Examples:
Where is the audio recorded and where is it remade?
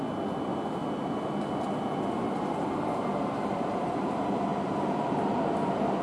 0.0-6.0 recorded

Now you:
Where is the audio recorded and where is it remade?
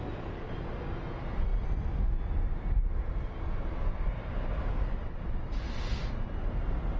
0.0-7.0 recorded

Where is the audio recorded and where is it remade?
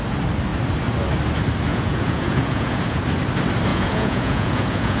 0.0-1.7 recorded; 1.7-3.0 remade; 3.0-3.7 recorded; 3.7-5.0 remade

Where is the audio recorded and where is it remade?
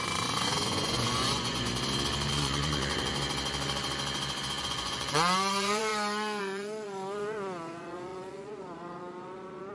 0.0-1.7 remade; 1.7-2.3 recorded; 2.3-3.1 remade; 3.1-4.6 recorded; 4.6-5.9 remade; 5.9-6.4 recorded; 6.4-9.7 remade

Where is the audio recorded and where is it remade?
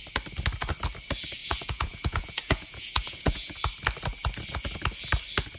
0.0-1.4 recorded; 1.4-3.6 remade; 3.6-5.6 recorded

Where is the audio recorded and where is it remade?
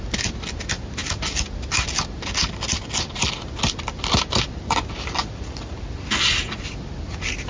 0.0-7.5 recorded